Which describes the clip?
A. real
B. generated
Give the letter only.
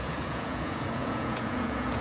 B